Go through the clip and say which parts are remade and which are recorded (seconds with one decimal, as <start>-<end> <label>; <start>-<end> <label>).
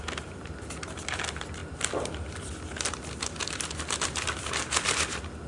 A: 0.0-5.5 recorded